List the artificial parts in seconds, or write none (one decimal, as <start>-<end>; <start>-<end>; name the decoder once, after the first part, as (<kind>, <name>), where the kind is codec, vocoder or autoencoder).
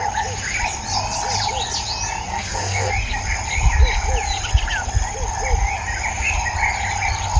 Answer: 2.3-2.9 (codec, SNAC)